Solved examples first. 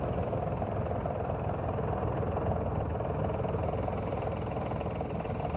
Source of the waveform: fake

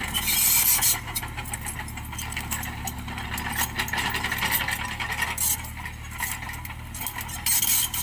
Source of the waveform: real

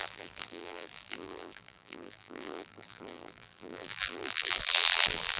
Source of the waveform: fake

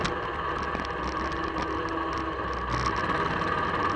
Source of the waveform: real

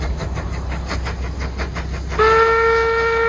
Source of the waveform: real